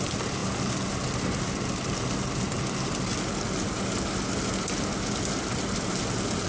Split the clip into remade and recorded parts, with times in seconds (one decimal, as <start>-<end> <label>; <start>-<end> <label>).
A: 0.0-6.5 recorded